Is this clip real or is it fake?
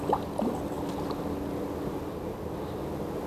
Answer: real